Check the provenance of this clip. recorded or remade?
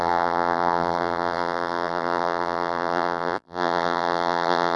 remade